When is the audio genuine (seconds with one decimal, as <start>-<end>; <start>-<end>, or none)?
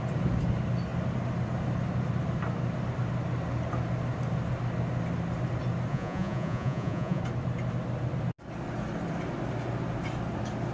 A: 0.0-5.9; 7.2-10.7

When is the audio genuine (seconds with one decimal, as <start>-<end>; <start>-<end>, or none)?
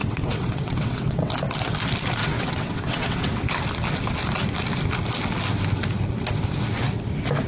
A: 1.3-2.2; 3.3-7.5